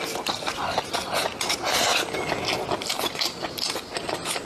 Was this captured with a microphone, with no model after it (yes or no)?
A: yes